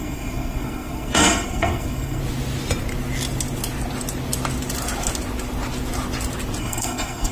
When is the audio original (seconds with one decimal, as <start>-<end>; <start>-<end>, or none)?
2.2-6.6